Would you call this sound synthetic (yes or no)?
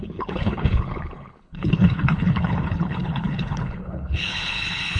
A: yes